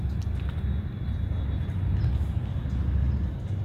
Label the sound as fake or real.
real